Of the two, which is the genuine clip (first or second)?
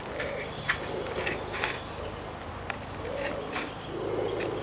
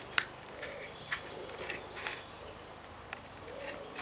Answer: first